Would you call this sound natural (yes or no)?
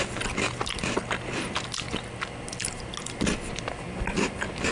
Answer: yes